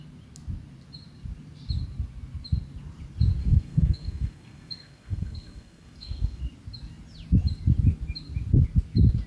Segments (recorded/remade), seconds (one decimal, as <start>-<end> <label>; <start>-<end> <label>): 0.0-3.4 recorded; 3.4-6.4 remade; 6.4-9.3 recorded

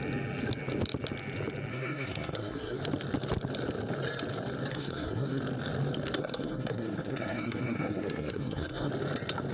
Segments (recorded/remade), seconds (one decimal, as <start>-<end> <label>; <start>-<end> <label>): 0.0-1.7 recorded; 1.7-2.8 remade; 2.8-4.7 recorded; 4.7-5.4 remade; 5.4-6.2 recorded; 6.2-8.9 remade; 8.9-9.5 recorded